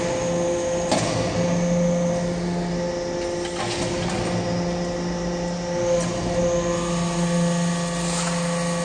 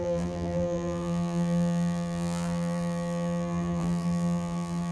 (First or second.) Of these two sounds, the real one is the first